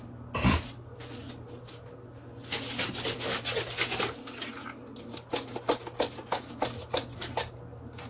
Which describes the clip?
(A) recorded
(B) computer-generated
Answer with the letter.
A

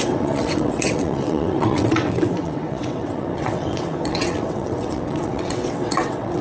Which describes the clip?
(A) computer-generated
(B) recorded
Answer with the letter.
A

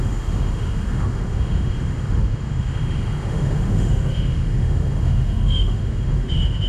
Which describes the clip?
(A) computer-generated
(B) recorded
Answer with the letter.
A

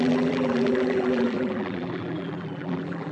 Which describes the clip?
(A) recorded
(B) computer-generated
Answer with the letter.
B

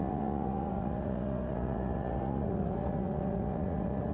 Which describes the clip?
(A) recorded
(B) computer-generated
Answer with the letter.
B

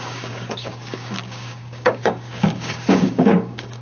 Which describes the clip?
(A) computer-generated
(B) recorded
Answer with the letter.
A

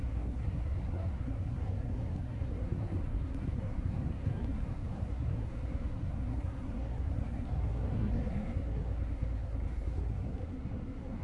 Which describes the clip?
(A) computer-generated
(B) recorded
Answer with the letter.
A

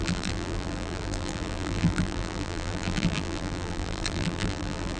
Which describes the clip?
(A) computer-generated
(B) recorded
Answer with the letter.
A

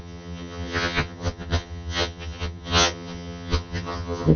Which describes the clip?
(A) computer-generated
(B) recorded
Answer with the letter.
A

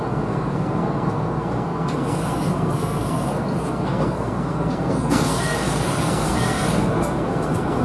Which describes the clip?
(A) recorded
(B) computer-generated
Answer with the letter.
B